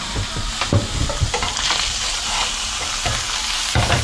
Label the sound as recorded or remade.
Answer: recorded